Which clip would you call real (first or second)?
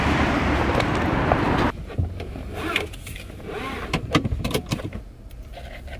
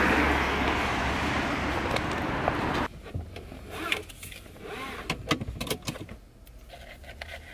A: second